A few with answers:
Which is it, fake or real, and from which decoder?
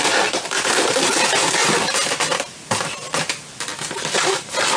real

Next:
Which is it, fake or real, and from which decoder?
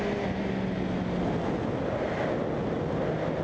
real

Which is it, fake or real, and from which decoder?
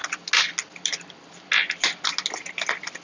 real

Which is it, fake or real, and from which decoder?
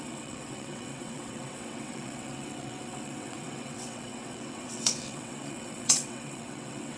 fake, vocoder, WaveNeXt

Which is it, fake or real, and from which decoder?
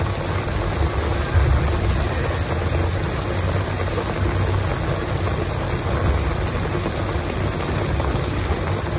real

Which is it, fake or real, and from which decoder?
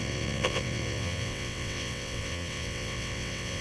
fake, vocoder, WaveNeXt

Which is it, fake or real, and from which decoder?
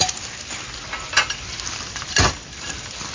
real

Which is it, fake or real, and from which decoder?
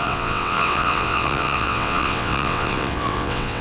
fake, vocoder, WaveNeXt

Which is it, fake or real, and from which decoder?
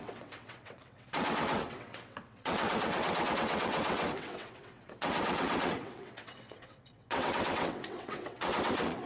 fake, vocoder, WaveNeXt